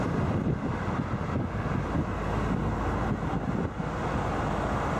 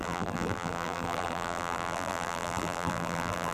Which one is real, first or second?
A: first